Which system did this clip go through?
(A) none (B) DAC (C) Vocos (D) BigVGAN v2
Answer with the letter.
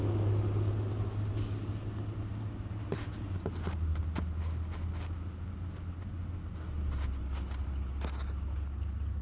A